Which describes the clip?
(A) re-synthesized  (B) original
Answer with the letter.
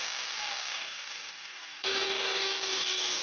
A